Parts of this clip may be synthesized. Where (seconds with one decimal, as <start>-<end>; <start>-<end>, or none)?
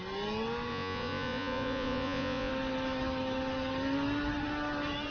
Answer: 0.7-2.5